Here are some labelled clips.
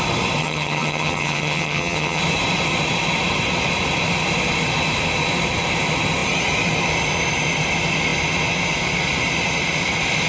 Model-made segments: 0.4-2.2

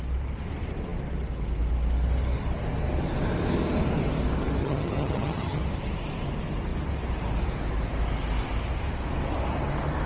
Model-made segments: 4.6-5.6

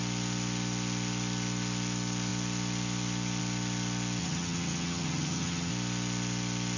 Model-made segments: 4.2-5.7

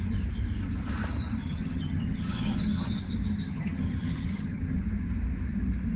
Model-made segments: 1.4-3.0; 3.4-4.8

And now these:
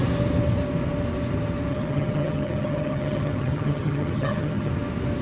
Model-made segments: 1.7-4.7

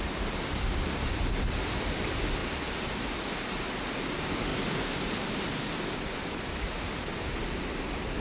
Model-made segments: none